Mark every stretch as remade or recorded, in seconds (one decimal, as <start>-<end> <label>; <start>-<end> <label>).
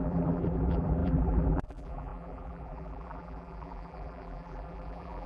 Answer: 0.0-5.3 remade